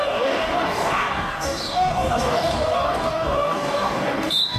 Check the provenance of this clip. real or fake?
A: fake